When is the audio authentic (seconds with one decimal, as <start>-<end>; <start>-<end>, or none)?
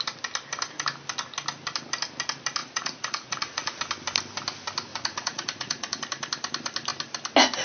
0.0-2.6; 3.8-4.9; 6.0-7.6